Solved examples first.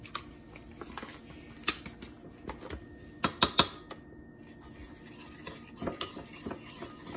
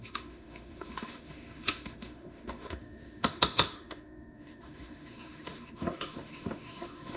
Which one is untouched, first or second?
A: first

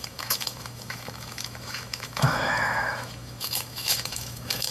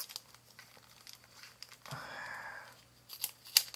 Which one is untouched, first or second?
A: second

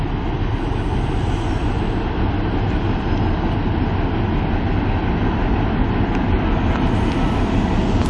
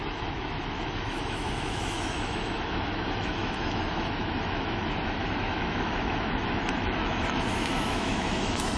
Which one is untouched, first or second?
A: first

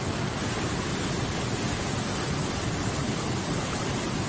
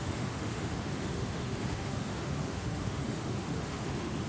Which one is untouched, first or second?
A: first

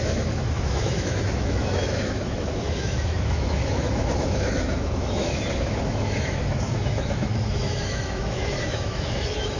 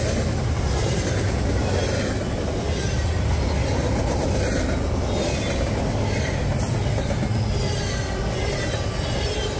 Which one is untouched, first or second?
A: second